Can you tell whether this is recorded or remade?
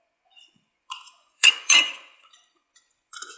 remade